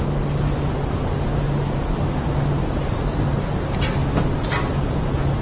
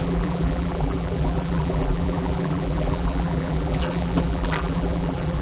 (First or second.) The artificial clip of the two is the second